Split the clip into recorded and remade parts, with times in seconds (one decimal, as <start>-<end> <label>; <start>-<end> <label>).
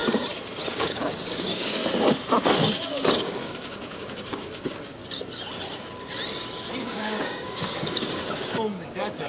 0.0-0.7 recorded; 0.7-1.8 remade; 1.8-2.6 recorded; 2.6-5.0 remade; 5.0-6.8 recorded; 6.8-9.3 remade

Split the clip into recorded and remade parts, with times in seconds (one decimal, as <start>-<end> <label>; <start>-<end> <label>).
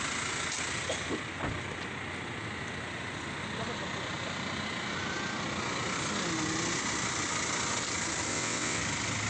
0.0-8.3 recorded; 8.3-8.8 remade; 8.8-9.3 recorded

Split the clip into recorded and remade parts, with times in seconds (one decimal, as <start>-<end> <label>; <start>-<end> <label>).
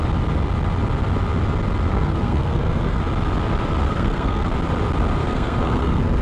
0.0-1.9 recorded; 1.9-3.0 remade; 3.0-3.9 recorded; 3.9-4.5 remade; 4.5-5.2 recorded; 5.2-6.2 remade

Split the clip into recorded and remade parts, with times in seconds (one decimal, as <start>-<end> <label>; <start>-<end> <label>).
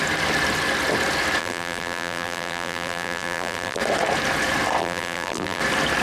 0.0-1.4 recorded; 1.4-3.8 remade; 3.8-4.8 recorded; 4.8-5.6 remade; 5.6-6.0 recorded